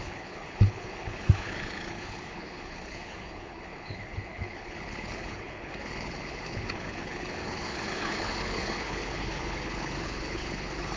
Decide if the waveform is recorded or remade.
remade